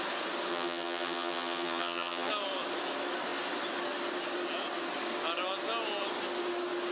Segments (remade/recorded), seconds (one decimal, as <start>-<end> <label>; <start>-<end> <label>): 0.0-0.5 recorded; 0.5-2.3 remade; 2.3-6.9 recorded